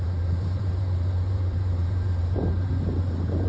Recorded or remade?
remade